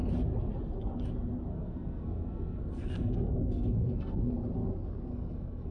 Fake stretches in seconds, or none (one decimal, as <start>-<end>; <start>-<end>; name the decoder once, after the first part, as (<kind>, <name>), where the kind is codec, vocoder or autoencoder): 1.5-4.3 (codec, SNAC); 5.1-5.7